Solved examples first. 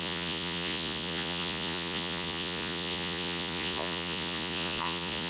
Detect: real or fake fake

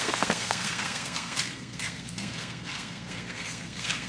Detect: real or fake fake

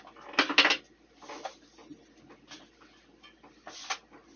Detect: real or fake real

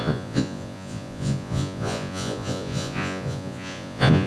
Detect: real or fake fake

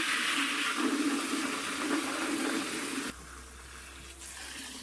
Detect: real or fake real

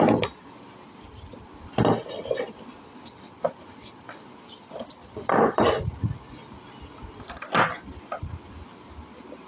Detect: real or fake real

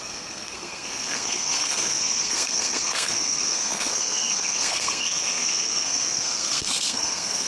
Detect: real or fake fake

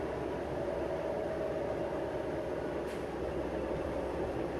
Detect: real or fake real